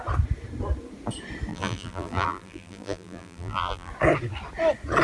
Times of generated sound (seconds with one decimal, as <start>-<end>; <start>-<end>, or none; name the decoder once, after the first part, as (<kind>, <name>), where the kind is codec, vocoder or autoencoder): 1.5-3.9 (vocoder, BigVGAN v2)